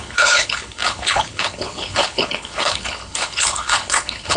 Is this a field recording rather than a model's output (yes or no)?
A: no